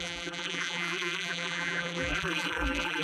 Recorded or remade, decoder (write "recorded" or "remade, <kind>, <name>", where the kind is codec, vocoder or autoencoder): remade, vocoder, BigVGAN v2